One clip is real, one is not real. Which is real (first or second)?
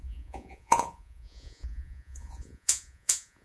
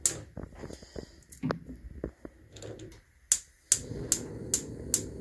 second